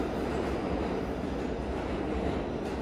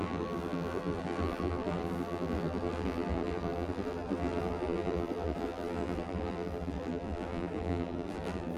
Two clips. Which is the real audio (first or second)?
first